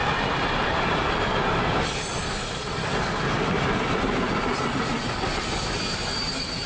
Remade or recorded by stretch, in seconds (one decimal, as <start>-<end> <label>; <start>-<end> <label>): 0.0-1.4 remade; 1.4-6.7 recorded